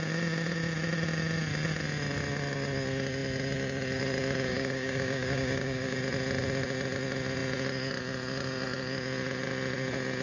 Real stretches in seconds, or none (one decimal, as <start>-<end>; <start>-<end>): 0.0-4.5; 6.0-10.2